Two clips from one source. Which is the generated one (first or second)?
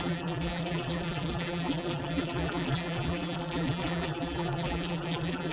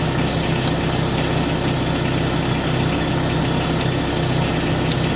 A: first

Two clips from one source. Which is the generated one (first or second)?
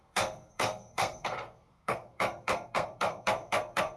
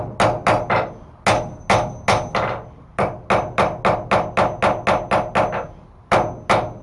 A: first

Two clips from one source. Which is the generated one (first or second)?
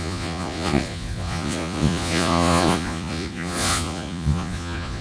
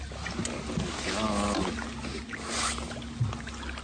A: first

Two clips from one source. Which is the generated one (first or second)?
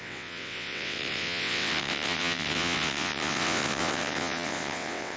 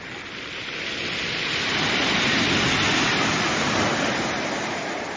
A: first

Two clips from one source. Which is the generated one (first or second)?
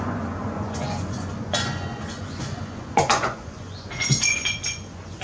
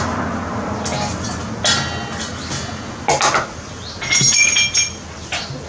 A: first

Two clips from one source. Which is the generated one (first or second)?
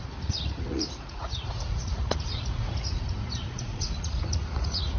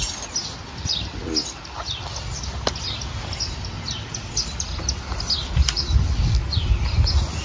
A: first